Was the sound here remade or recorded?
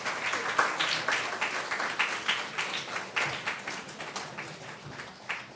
recorded